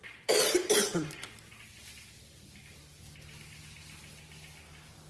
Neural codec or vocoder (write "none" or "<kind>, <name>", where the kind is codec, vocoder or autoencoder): none